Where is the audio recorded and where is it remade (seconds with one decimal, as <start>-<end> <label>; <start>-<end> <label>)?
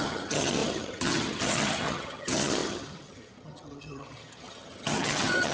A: 0.0-5.5 remade